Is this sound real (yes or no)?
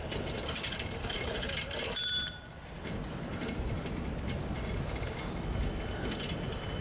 yes